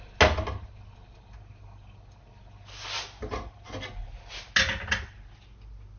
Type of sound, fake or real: real